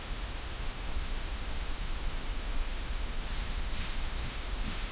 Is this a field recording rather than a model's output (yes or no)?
no